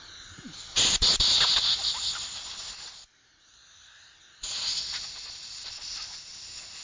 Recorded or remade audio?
recorded